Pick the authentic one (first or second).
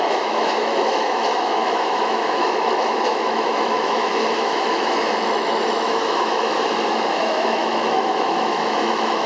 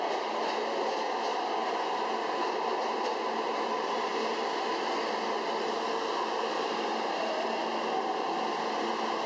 second